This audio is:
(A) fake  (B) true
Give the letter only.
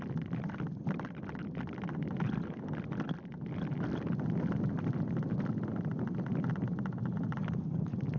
B